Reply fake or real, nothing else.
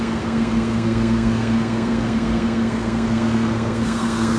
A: fake